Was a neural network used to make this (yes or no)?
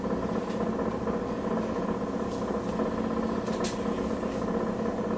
no